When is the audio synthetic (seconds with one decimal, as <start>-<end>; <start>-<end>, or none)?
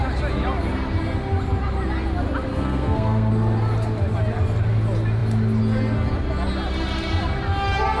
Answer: 2.5-3.3